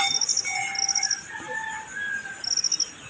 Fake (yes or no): no